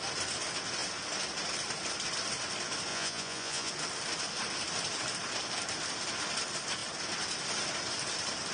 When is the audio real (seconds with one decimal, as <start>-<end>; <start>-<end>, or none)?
0.0-2.9; 3.7-8.5